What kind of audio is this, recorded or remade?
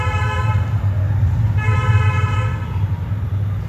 recorded